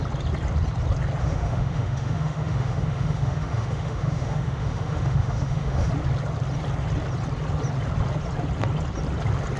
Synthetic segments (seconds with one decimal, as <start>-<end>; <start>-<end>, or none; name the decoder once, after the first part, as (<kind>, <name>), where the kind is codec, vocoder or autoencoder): 1.2-5.9 (autoencoder, DAC-VAE)